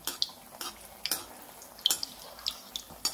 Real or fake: real